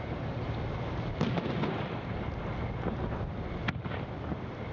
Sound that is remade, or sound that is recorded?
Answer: recorded